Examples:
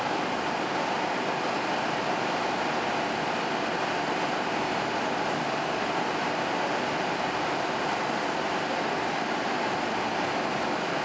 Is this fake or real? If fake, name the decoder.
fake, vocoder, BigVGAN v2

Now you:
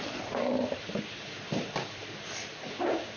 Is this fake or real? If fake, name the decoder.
fake, vocoder, BigVGAN v2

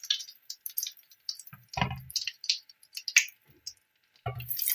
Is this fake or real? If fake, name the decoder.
real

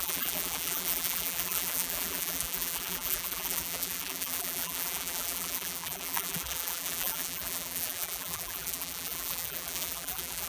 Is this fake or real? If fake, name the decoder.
fake, vocoder, BigVGAN v2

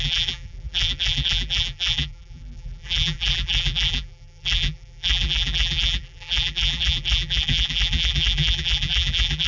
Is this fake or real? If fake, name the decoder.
fake, vocoder, BigVGAN v2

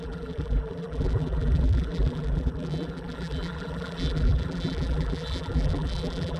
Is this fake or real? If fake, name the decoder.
fake, vocoder, BigVGAN v2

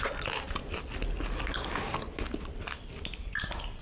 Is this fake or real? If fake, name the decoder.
real